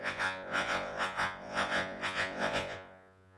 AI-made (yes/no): yes